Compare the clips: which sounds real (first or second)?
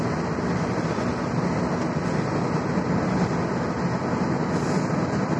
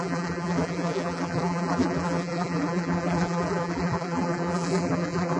first